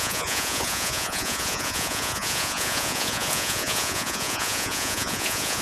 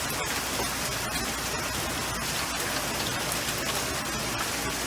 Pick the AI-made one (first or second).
first